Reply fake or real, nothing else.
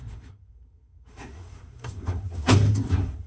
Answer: fake